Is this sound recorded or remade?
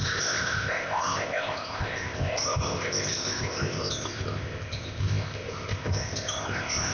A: remade